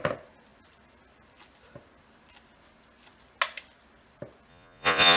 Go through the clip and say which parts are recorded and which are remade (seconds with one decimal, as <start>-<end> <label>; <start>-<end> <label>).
0.0-4.5 recorded; 4.5-5.2 remade